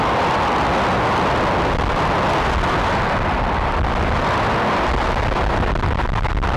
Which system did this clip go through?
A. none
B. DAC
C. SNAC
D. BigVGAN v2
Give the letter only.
A